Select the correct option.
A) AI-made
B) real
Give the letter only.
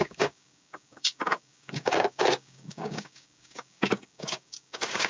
A